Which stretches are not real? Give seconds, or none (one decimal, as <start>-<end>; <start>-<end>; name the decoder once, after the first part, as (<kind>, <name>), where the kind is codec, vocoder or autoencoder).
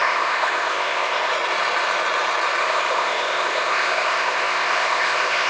0.0-1.3 (codec, ZipCodec); 2.6-5.5